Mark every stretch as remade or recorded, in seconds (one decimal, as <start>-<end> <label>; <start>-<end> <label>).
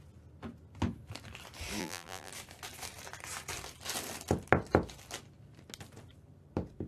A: 0.0-1.8 recorded; 1.8-2.3 remade; 2.3-6.9 recorded